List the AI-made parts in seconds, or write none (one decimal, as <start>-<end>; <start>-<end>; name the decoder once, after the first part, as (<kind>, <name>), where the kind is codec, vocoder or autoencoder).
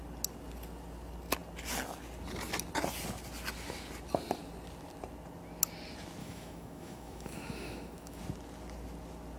6.2-8.2 (autoencoder, DAC-VAE)